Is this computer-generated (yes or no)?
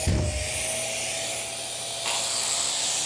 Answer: no